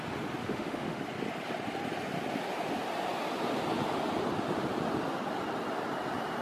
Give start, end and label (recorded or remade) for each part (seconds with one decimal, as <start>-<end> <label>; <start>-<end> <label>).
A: 0.0-0.4 recorded; 0.4-1.0 remade; 1.0-6.4 recorded